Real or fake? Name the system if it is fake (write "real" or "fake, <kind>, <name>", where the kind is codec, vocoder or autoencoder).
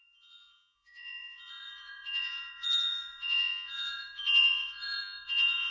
fake, vocoder, Vocos